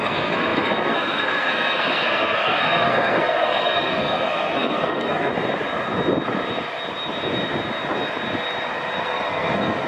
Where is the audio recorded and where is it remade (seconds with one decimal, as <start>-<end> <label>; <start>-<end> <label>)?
0.0-5.3 remade; 5.3-9.0 recorded; 9.0-9.9 remade